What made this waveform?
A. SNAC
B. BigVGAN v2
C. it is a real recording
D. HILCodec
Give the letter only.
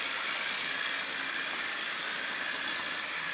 B